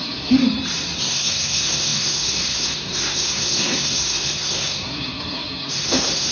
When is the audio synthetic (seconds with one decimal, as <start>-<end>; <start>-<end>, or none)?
0.0-0.4; 1.0-6.3